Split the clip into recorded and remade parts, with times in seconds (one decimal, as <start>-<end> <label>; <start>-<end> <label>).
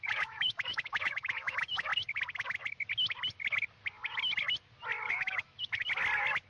0.0-1.9 remade; 1.9-5.1 recorded; 5.1-5.8 remade; 5.8-6.5 recorded